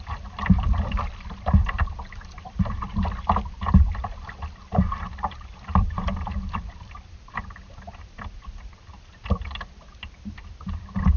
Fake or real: fake